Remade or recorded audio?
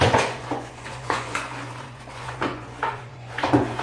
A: remade